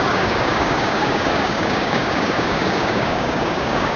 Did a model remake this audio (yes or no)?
yes